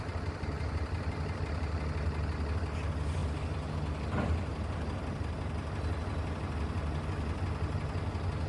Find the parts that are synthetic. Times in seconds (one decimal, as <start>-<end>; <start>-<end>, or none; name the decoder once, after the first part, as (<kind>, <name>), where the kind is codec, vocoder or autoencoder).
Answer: none